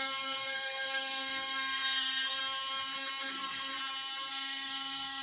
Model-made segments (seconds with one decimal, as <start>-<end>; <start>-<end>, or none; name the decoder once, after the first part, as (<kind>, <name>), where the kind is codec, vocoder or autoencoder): 0.0-2.4 (codec, SNAC); 3.3-3.7; 4.3-5.2